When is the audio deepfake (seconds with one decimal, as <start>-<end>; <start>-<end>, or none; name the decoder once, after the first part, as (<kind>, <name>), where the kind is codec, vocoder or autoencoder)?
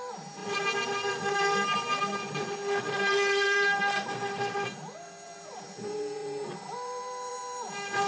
0.0-8.1 (vocoder, BigVGAN v2)